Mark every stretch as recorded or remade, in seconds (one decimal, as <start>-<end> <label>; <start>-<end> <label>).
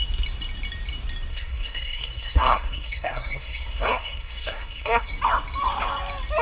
0.0-1.3 recorded; 1.3-5.1 remade; 5.1-6.4 recorded